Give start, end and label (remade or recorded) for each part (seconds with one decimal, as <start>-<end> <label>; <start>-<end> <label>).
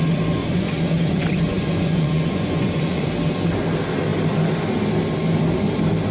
0.0-0.4 recorded; 0.4-3.1 remade; 3.1-6.1 recorded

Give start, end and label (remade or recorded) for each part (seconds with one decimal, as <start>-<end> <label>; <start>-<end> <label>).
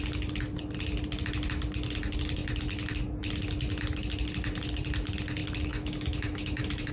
0.0-5.4 recorded; 5.4-6.9 remade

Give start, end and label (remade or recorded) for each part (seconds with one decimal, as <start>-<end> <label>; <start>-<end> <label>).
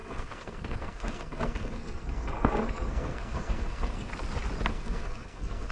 0.0-4.1 remade; 4.1-4.7 recorded; 4.7-5.7 remade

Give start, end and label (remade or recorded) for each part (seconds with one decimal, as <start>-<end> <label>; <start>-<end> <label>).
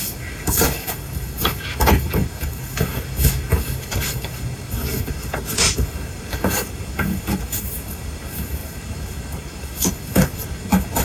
0.0-11.0 remade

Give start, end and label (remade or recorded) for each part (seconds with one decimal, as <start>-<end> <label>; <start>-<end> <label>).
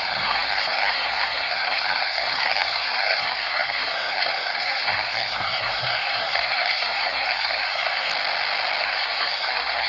0.0-8.1 remade; 8.1-8.8 recorded; 8.8-9.9 remade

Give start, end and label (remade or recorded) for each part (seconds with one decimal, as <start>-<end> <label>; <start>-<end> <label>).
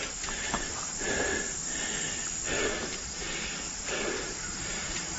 0.0-5.2 recorded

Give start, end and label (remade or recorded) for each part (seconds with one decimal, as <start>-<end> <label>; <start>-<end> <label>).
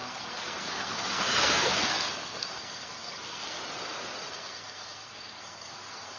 0.0-3.6 remade; 3.6-4.3 recorded; 4.3-6.2 remade